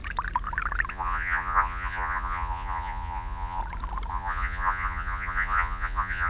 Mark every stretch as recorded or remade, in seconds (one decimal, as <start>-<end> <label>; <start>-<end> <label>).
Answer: 0.0-0.9 recorded; 0.9-3.6 remade; 3.6-4.1 recorded; 4.1-6.3 remade